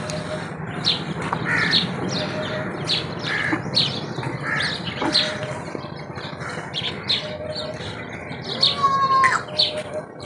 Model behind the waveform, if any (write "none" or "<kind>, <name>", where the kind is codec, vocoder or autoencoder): none